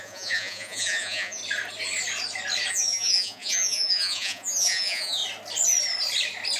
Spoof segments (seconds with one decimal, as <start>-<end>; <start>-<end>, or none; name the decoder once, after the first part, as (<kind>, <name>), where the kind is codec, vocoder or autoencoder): 0.0-1.4 (vocoder, Vocos); 2.7-5.2